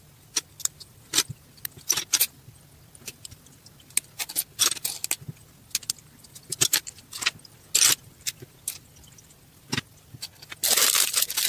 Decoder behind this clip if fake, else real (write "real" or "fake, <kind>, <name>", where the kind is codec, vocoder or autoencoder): real